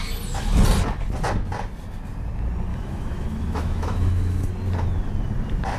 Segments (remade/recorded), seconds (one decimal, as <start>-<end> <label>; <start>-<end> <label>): 0.0-2.7 recorded; 2.7-4.5 remade; 4.5-5.8 recorded